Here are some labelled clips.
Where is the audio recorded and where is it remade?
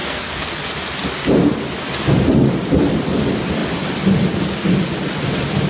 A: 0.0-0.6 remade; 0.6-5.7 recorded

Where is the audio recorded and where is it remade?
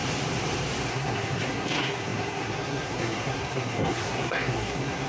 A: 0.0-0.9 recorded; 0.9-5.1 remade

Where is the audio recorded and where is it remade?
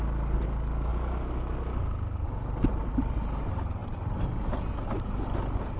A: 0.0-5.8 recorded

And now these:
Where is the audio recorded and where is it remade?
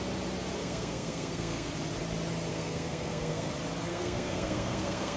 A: 0.0-0.6 recorded; 0.6-1.7 remade; 1.7-2.5 recorded; 2.5-3.5 remade; 3.5-3.9 recorded; 3.9-5.2 remade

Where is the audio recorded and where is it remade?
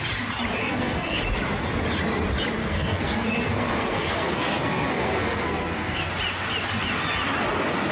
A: 0.0-0.6 recorded; 0.6-1.2 remade; 1.2-2.6 recorded; 2.6-6.1 remade; 6.1-7.9 recorded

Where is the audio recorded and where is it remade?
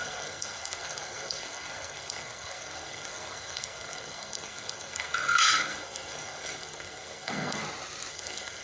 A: 0.0-7.6 remade; 7.6-8.1 recorded; 8.1-8.6 remade